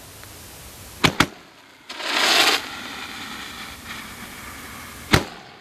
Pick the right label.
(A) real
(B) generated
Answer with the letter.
A